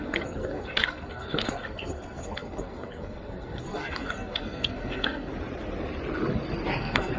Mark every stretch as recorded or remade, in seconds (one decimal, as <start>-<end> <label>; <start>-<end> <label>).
0.0-5.3 remade; 5.3-6.8 recorded; 6.8-7.2 remade